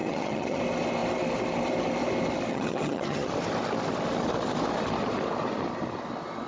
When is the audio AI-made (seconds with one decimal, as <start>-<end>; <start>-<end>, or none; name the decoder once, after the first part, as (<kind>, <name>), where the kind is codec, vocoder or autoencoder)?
0.0-0.6 (vocoder, HiFi-GAN); 2.5-3.3